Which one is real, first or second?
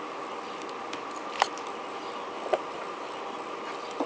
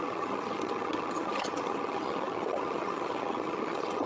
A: first